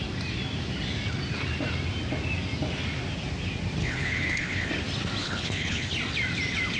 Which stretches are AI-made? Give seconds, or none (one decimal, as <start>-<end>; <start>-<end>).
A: 3.8-4.7; 5.2-5.9

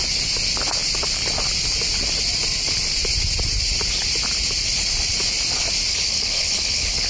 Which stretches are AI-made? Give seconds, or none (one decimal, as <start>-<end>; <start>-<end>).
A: 5.9-7.1

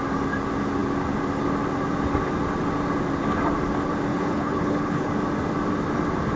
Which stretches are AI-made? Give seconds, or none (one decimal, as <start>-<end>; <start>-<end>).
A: 4.1-5.1

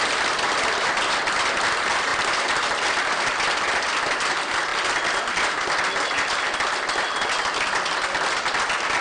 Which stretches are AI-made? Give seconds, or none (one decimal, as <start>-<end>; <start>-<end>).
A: none

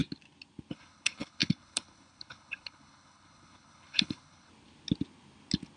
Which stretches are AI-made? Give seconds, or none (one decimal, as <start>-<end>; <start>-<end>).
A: 0.7-4.5

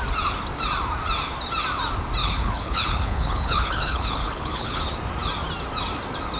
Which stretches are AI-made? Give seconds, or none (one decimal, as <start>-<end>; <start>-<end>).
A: 2.2-4.8